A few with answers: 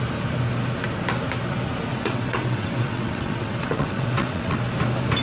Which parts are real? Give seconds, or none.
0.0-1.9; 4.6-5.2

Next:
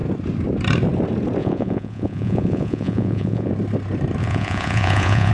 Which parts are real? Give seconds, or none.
0.0-1.4; 3.5-4.2

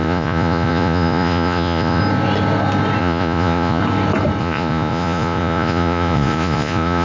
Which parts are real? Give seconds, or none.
2.0-3.0; 3.8-4.4

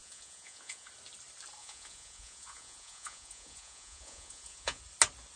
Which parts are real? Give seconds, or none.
0.9-1.6; 4.8-5.4

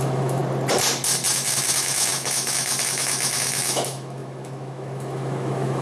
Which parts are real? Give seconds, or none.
0.4-1.3

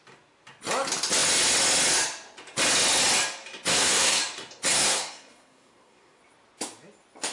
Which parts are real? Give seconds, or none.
0.0-3.7; 4.2-4.7; 6.2-7.3